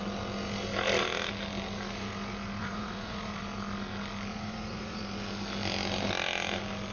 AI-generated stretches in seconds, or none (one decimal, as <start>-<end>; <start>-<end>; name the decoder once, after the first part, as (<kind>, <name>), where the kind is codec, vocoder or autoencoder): 2.6-3.4 (vocoder, Vocos); 4.3-5.0